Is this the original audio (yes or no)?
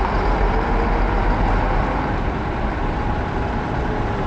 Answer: yes